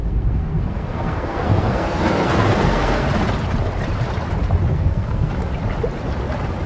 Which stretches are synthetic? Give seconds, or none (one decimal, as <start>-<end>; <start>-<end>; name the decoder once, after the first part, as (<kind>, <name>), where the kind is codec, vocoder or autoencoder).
0.0-3.1 (codec, SNAC); 4.7-5.3